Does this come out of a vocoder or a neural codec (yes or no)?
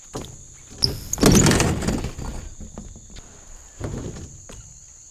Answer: no